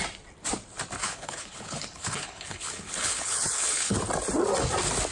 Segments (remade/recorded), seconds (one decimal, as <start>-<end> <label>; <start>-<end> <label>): 0.0-1.0 recorded; 1.0-4.0 remade; 4.0-5.1 recorded